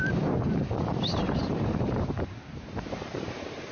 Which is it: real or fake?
fake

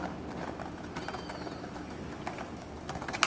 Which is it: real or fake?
real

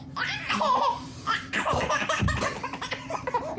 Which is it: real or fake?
fake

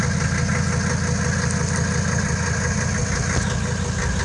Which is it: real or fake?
real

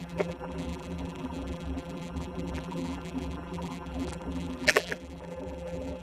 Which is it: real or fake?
fake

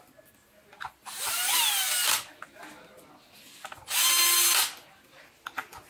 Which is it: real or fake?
real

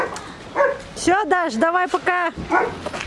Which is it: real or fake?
real